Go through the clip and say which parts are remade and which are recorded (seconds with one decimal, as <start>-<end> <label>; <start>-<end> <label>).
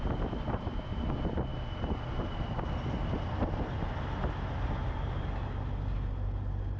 0.0-6.8 recorded